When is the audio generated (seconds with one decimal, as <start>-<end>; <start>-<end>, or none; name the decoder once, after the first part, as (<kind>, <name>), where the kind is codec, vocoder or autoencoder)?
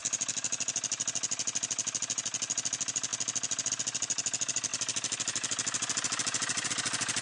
4.7-6.7 (vocoder, BigVGAN v2)